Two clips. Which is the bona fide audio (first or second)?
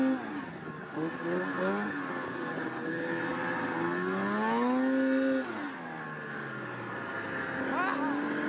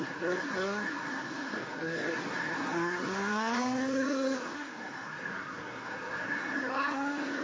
first